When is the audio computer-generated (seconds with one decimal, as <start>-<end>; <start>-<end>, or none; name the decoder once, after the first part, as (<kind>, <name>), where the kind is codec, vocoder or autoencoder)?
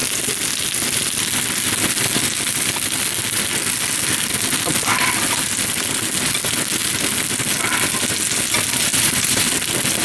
8.9-9.5 (vocoder, BigVGAN v2)